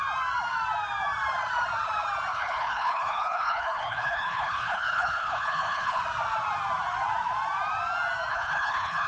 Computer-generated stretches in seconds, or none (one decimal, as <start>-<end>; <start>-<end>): 2.3-6.0; 8.3-9.1